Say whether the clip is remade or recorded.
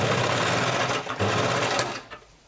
recorded